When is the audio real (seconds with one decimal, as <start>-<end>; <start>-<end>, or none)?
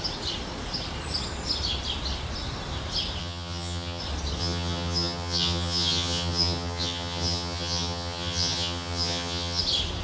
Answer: 0.0-3.2; 4.0-4.4; 9.6-10.0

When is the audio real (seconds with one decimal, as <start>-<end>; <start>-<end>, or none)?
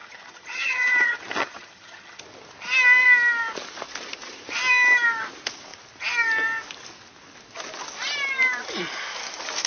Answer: 2.2-9.7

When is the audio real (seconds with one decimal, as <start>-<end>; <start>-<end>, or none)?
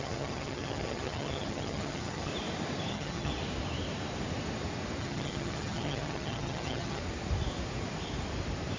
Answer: 2.3-2.9; 3.3-5.0; 7.0-8.8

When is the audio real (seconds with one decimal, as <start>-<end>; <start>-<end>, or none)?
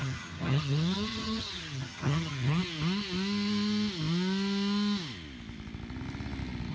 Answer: 2.6-6.7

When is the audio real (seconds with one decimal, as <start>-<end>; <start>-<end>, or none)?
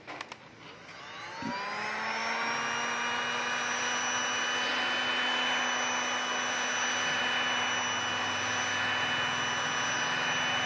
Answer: 0.0-10.7